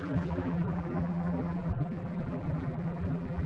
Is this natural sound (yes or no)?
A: no